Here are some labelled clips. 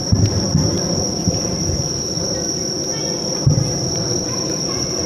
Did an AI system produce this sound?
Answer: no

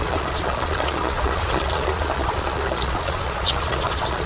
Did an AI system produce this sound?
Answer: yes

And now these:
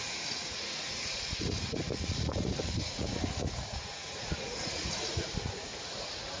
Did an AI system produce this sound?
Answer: yes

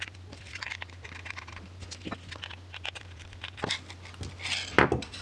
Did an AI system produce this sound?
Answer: no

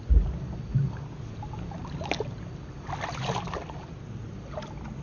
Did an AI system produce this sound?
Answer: no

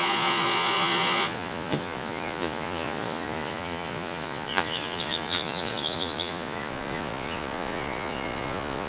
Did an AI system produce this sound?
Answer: yes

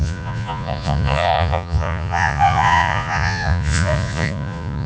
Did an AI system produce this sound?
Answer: yes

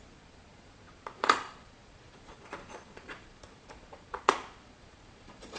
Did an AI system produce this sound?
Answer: yes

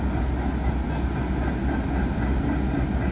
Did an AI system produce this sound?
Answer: no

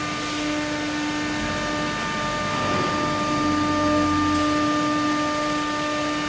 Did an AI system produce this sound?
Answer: no